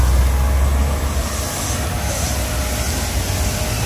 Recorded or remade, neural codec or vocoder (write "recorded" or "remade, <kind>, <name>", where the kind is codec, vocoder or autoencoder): recorded